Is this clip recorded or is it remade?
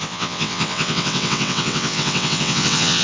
remade